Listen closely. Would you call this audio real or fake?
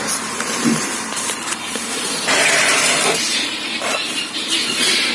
fake